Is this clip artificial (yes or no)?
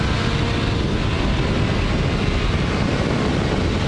no